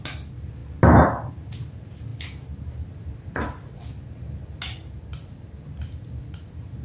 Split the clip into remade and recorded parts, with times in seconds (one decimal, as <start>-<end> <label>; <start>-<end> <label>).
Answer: 0.0-6.8 recorded